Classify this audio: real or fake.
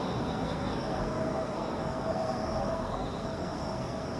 fake